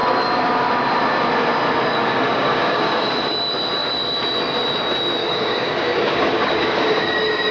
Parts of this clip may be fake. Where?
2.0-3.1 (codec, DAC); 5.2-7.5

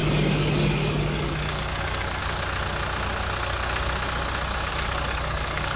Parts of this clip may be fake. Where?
0.0-2.2 (codec, DAC); 4.7-5.8

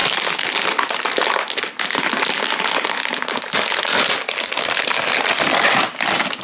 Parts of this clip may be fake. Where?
none

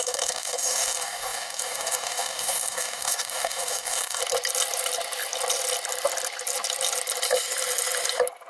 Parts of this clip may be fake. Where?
0.0-4.2 (codec, DAC)

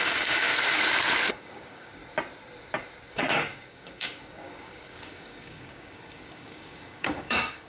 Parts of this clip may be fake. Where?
0.0-0.5 (codec, DAC); 1.3-2.0; 3.1-7.7

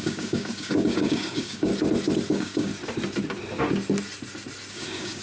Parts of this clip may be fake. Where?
0.0-1.7 (codec, DAC); 2.3-2.7; 4.7-5.2

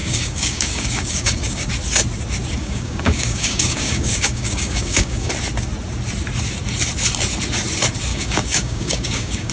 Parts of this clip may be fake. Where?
0.0-1.7 (codec, DAC); 2.6-5.3; 8.1-9.5